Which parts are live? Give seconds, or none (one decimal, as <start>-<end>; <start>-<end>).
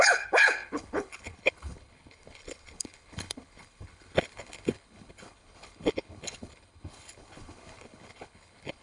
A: none